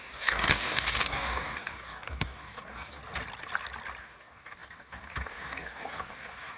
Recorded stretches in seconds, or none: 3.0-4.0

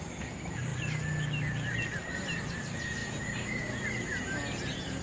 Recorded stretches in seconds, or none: 0.0-5.0

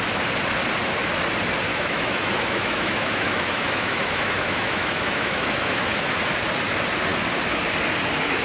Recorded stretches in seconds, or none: 0.0-1.7; 6.2-8.4

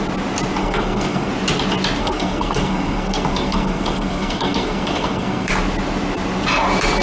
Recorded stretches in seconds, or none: 0.0-0.6; 1.3-2.0; 5.5-7.0

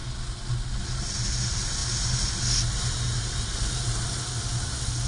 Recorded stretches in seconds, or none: 0.0-5.1